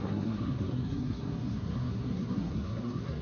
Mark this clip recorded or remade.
remade